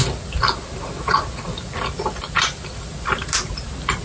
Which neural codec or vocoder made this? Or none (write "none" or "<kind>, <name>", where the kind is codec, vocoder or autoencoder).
none